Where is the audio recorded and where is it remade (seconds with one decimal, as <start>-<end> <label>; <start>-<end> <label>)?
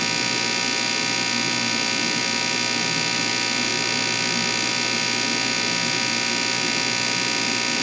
0.0-7.8 recorded